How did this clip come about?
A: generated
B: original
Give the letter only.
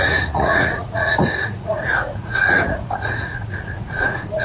A